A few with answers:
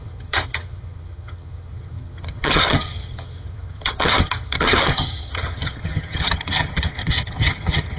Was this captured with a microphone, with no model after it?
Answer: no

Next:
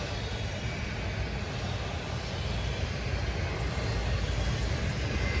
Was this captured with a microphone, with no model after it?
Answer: yes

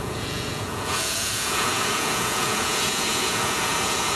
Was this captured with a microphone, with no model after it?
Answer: no